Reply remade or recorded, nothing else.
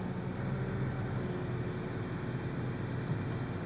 recorded